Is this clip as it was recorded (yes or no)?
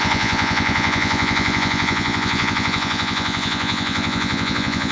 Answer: no